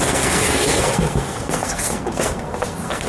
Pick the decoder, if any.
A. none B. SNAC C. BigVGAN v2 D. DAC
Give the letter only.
B